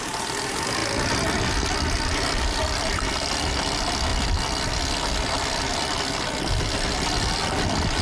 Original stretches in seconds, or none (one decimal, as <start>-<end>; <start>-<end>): 0.0-8.0